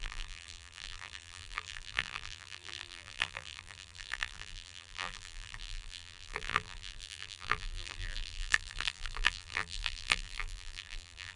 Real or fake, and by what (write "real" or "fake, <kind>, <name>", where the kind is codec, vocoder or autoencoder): fake, vocoder, BigVGAN v2